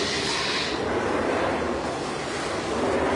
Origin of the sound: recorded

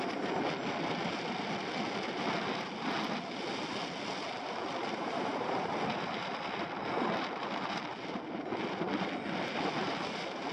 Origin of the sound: recorded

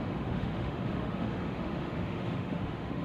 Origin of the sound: remade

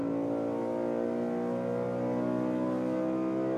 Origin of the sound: recorded